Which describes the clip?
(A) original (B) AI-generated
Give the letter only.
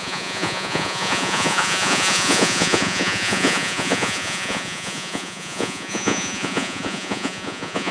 B